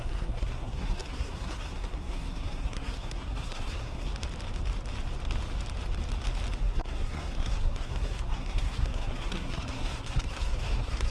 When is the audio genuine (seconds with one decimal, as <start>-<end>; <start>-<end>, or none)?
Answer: 4.1-6.6